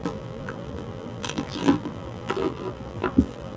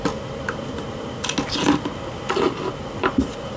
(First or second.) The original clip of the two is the second